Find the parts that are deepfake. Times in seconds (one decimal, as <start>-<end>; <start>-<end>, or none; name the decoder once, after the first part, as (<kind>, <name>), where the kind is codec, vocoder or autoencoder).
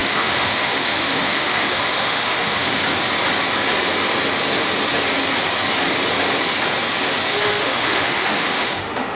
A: 0.0-2.8 (autoencoder, DAC-VAE); 7.3-9.1